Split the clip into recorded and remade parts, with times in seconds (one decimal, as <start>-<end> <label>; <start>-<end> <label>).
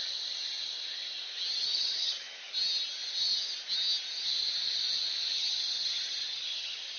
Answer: 0.0-1.6 recorded; 1.6-2.5 remade; 2.5-5.4 recorded; 5.4-7.0 remade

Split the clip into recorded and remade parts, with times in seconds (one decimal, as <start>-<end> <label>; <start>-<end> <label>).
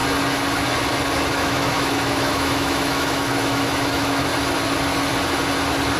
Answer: 0.0-1.3 recorded; 1.3-4.3 remade; 4.3-6.0 recorded